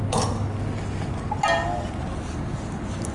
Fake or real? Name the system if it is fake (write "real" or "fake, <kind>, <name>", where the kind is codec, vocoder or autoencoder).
real